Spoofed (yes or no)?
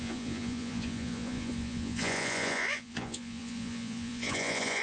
yes